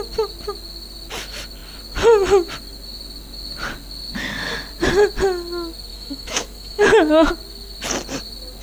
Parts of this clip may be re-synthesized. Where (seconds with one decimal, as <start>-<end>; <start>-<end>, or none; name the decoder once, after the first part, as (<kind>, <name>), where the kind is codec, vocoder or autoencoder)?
5.9-7.3 (autoencoder, DAC-VAE)